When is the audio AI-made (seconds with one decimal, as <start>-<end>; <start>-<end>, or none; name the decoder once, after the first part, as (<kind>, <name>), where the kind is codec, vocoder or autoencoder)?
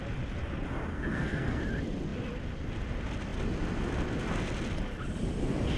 0.9-1.6 (codec, SNAC)